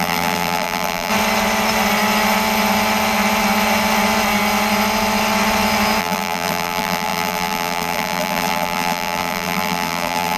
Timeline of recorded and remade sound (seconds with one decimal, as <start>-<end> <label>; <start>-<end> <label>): 0.0-1.1 remade; 1.1-6.0 recorded; 6.0-10.4 remade